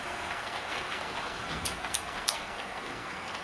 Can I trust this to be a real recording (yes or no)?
no